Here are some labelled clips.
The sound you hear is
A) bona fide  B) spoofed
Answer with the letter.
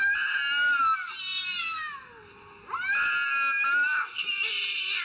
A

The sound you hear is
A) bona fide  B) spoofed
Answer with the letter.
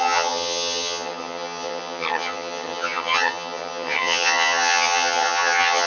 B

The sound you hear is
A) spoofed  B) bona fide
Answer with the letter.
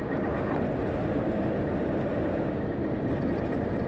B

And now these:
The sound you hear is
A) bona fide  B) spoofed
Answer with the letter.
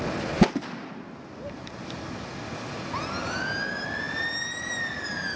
A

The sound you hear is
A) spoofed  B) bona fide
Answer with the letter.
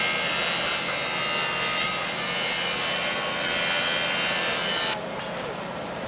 B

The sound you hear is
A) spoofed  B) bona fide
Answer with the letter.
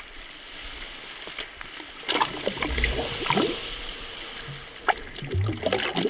B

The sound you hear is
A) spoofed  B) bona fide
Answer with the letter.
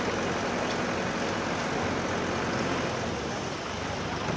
B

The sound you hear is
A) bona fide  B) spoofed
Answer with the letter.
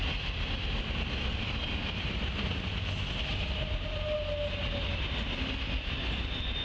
A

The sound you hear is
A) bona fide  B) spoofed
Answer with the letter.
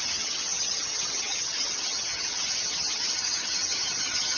B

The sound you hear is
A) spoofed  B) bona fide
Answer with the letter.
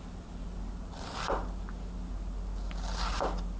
B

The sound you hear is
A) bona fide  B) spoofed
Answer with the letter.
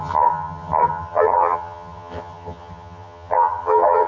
B